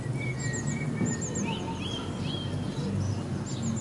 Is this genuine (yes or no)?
yes